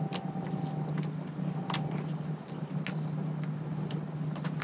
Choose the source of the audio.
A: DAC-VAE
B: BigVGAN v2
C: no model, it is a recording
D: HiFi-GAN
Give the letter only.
C